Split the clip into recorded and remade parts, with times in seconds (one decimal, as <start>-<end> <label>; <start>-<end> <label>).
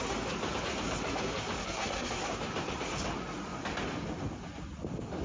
0.0-1.6 recorded; 1.6-2.1 remade; 2.1-5.2 recorded